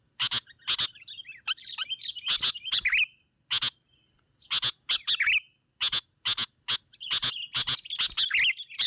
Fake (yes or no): no